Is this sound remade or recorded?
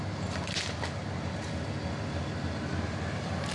recorded